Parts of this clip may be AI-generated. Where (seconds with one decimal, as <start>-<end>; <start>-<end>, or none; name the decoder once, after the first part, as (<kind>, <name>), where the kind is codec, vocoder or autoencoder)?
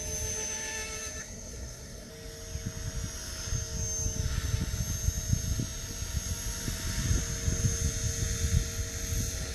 1.2-2.1 (codec, SNAC)